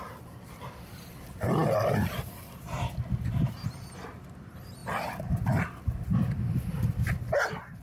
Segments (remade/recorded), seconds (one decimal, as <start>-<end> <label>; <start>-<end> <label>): 0.0-2.7 remade; 2.7-3.5 recorded; 3.5-4.8 remade; 4.8-5.3 recorded; 5.3-7.8 remade